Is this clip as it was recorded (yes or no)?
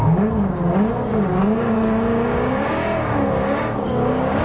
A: no